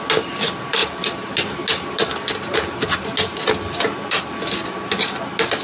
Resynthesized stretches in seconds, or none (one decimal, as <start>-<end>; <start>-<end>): none